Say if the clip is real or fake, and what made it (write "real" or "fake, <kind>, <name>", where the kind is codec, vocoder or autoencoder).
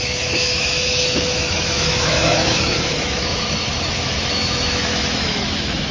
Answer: fake, autoencoder, DAC-VAE